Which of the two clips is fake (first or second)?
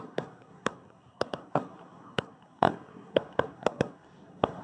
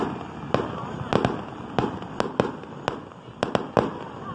first